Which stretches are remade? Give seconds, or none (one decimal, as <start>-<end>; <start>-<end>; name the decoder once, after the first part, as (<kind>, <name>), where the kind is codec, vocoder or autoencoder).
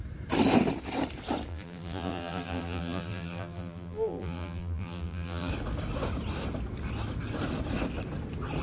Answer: 1.5-5.5 (vocoder, BigVGAN v2)